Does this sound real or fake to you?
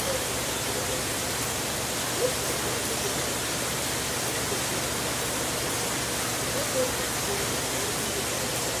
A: real